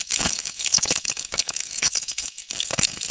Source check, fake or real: fake